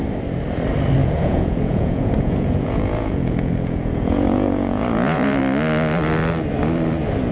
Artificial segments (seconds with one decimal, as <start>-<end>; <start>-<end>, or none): 1.0-5.4